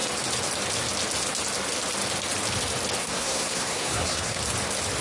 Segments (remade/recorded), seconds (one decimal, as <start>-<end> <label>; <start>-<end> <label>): 0.0-3.0 recorded; 3.0-4.4 remade; 4.4-5.0 recorded

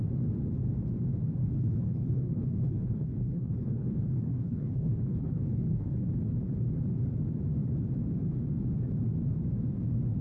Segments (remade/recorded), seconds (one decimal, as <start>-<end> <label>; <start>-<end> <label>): 0.0-1.4 recorded; 1.4-6.1 remade; 6.1-10.2 recorded